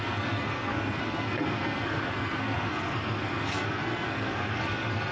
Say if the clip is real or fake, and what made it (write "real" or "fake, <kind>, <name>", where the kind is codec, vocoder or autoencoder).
fake, codec, SNAC